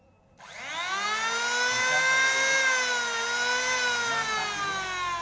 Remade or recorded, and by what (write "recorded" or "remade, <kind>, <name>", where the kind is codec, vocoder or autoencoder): recorded